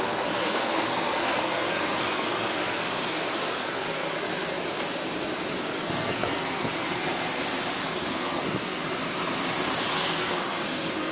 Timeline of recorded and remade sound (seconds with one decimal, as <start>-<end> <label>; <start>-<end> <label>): 0.0-4.6 remade; 4.6-5.7 recorded; 5.7-7.1 remade; 7.1-7.8 recorded; 7.8-8.8 remade; 8.8-9.9 recorded; 9.9-11.1 remade